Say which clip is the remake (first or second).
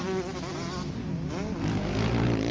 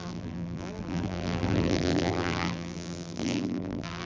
second